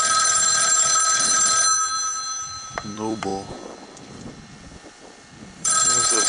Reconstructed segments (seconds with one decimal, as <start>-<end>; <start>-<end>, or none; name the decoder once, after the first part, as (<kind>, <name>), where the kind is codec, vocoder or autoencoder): 0.0-3.3 (vocoder, BigVGAN v2); 5.4-6.3